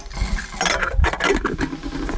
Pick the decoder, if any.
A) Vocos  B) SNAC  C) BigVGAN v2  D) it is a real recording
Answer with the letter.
D